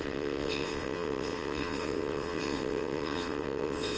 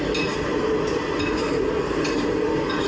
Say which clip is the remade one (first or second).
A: first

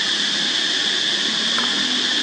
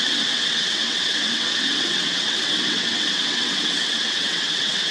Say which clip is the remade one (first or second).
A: second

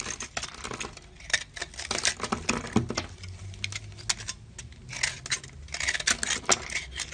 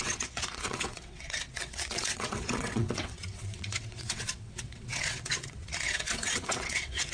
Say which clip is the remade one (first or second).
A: second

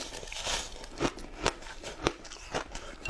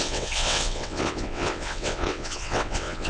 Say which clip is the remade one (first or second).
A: second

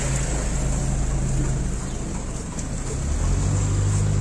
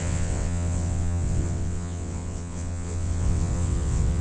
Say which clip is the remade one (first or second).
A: second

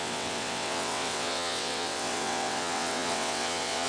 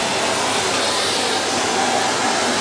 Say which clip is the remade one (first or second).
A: first